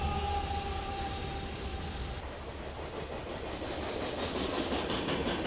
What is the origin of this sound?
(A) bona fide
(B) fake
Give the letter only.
A